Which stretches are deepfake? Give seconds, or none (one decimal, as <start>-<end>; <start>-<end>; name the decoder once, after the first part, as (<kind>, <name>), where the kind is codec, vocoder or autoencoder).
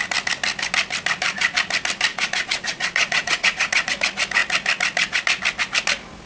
2.1-3.9 (vocoder, Vocos)